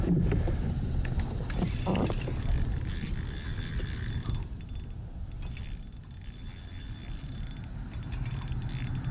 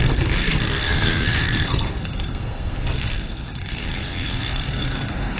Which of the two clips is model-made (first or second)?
second